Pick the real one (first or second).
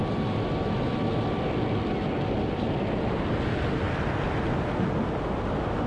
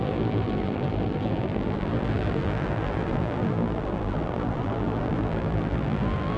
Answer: first